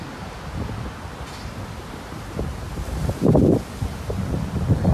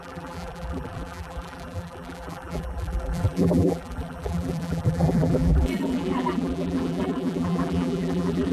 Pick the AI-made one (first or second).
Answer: second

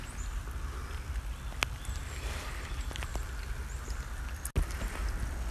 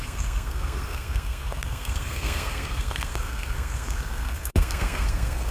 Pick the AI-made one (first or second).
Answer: second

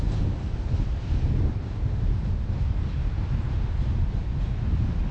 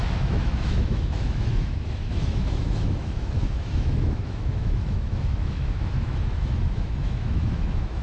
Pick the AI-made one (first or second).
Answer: second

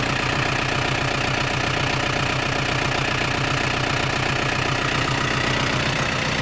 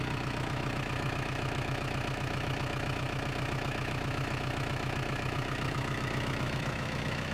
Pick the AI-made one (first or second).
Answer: second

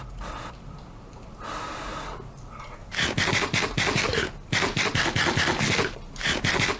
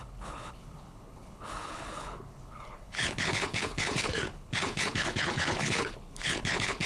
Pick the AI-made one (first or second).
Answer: second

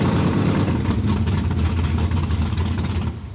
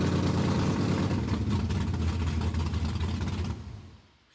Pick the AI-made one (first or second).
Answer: first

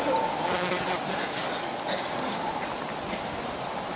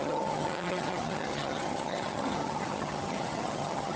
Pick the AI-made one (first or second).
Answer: second